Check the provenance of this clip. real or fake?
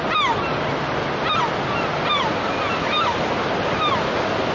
real